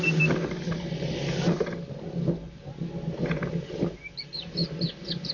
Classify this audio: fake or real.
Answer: real